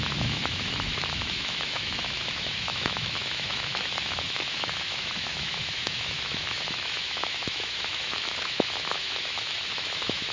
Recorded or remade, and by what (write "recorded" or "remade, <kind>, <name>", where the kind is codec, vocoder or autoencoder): remade, autoencoder, DAC-VAE